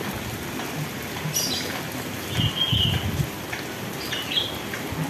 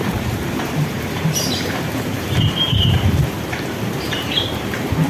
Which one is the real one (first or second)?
first